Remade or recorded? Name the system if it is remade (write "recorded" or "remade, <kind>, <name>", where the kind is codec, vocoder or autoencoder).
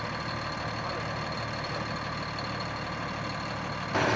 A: recorded